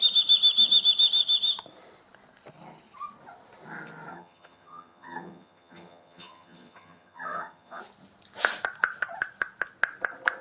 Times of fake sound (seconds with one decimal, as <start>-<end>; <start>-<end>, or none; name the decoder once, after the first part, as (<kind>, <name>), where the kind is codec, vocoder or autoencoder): 4.1-7.8 (vocoder, HiFi-GAN)